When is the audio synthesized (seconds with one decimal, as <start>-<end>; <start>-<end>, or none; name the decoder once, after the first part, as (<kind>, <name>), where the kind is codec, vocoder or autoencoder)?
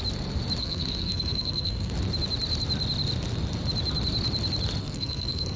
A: 0.6-1.9 (codec, SNAC); 4.8-5.6